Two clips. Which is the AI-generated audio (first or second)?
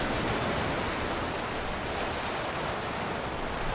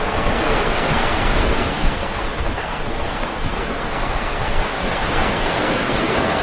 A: second